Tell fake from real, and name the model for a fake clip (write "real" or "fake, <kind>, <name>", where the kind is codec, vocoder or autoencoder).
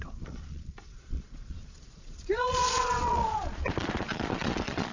fake, vocoder, Vocos